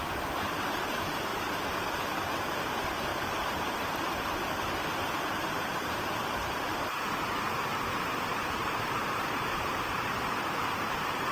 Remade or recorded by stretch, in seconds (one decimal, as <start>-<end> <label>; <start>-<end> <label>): 0.0-3.1 recorded; 3.1-7.0 remade; 7.0-8.6 recorded; 8.6-11.3 remade